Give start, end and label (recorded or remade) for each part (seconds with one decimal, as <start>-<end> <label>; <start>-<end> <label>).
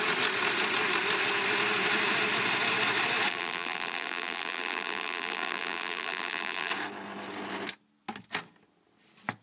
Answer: 0.0-3.3 recorded; 3.3-6.7 remade; 6.7-9.4 recorded